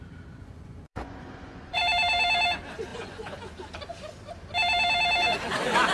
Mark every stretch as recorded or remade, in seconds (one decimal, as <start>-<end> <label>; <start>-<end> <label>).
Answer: 0.0-0.4 recorded; 0.4-1.8 remade; 1.8-2.9 recorded; 2.9-3.5 remade; 3.5-5.9 recorded